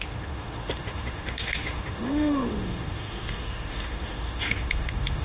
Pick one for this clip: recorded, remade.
remade